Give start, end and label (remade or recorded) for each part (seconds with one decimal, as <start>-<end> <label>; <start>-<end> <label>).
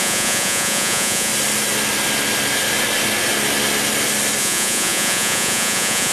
0.0-1.3 remade; 1.3-4.4 recorded; 4.4-6.1 remade